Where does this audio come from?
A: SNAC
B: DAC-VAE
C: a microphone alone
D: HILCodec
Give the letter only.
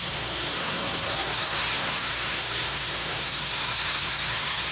A